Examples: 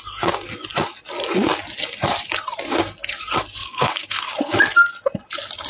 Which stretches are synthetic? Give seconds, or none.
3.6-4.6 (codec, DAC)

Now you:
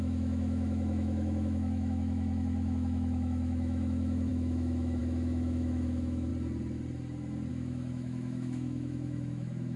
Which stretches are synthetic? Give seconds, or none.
0.0-6.3 (autoencoder, DAC-VAE); 7.5-9.8

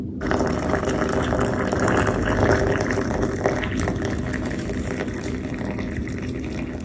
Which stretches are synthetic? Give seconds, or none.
none

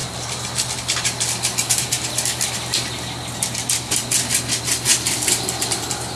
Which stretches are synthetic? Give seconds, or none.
0.0-3.6 (vocoder, BigVGAN v2); 4.9-5.8